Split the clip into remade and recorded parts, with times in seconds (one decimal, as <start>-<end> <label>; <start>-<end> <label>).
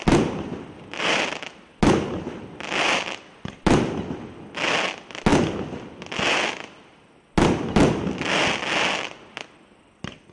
0.0-10.3 recorded